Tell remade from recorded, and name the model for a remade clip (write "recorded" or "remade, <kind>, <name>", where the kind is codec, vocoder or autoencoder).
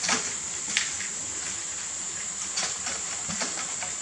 recorded